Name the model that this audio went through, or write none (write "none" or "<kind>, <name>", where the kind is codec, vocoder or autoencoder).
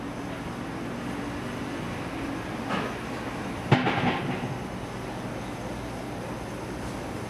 none